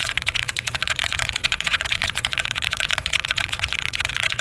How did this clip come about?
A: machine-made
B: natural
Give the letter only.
A